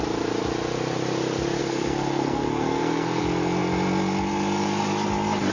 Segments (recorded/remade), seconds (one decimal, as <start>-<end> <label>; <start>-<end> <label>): 0.0-1.6 recorded; 1.6-3.2 remade; 3.2-5.5 recorded